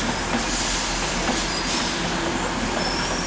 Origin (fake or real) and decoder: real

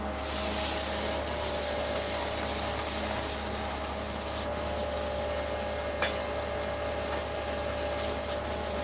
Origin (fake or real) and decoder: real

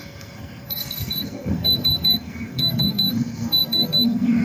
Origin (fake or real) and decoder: fake, codec, SNAC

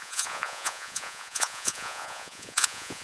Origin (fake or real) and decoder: fake, vocoder, Vocos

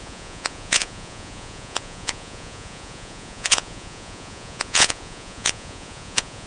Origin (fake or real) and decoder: fake, vocoder, Vocos